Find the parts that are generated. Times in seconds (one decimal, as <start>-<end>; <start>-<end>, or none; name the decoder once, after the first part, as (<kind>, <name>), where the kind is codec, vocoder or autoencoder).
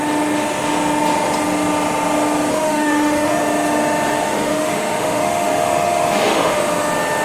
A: 2.5-3.4 (autoencoder, DAC-VAE); 4.2-6.6